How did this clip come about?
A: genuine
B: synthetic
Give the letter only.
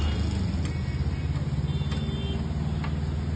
A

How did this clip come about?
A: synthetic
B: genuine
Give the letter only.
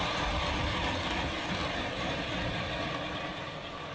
B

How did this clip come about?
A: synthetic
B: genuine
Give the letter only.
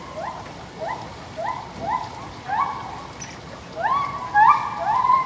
B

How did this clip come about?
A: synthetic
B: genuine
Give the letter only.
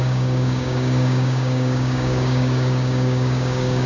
A